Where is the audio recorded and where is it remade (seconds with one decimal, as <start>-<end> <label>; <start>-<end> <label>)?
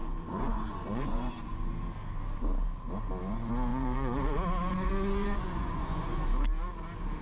0.0-1.7 remade; 1.7-3.7 recorded; 3.7-6.2 remade; 6.2-7.2 recorded